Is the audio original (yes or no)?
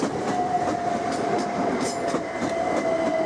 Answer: yes